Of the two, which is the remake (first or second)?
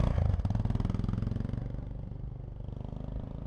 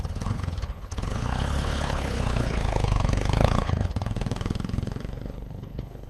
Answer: second